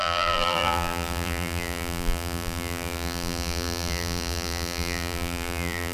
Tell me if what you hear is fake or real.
fake